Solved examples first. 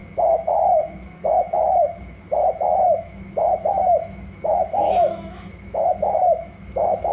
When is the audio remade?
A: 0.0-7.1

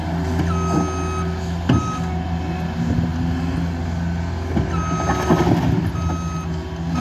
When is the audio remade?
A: none